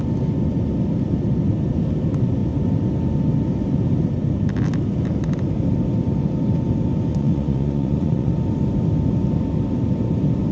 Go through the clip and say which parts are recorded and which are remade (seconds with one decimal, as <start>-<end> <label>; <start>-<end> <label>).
0.0-7.1 recorded; 7.1-8.3 remade; 8.3-10.5 recorded